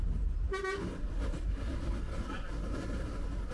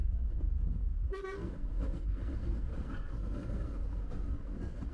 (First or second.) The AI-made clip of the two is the second